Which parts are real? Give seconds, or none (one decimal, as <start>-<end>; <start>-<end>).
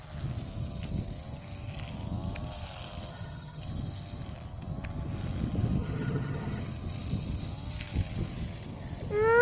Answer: 0.0-3.1; 3.6-5.8; 6.6-9.4